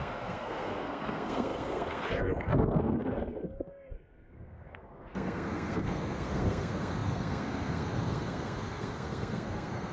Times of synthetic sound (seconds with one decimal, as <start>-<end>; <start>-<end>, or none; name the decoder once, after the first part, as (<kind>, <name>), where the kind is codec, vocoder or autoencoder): 0.0-9.9 (codec, SNAC)